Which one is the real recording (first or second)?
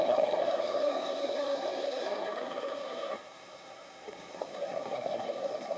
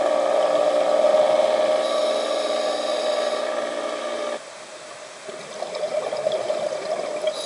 second